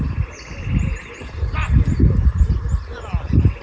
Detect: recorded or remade recorded